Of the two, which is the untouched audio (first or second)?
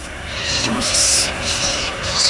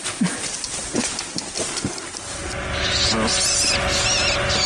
second